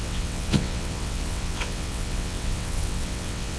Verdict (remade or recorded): remade